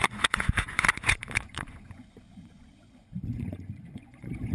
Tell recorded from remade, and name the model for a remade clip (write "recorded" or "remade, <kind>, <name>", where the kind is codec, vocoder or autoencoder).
remade, vocoder, Vocos